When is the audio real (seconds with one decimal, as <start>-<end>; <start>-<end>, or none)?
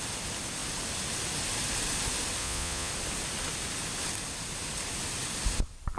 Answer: 0.0-2.4; 2.9-6.0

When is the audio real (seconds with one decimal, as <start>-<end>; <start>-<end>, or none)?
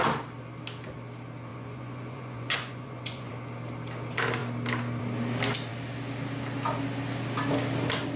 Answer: 0.0-1.5; 3.3-8.2